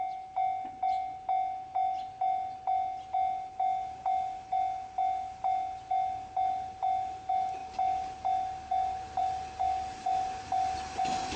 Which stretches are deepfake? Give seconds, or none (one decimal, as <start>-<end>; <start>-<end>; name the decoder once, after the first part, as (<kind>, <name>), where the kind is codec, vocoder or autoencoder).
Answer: none